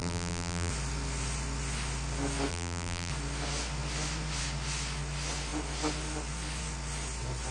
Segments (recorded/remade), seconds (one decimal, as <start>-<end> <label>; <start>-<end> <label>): 0.0-0.7 remade; 0.7-2.5 recorded; 2.5-3.1 remade; 3.1-7.5 recorded